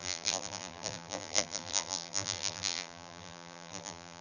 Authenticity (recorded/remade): remade